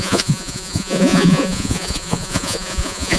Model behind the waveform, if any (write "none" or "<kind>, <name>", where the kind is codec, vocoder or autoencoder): vocoder, Vocos